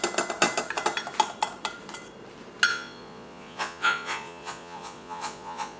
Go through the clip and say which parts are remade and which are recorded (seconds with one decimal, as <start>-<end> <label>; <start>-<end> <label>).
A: 0.0-2.7 recorded; 2.7-5.8 remade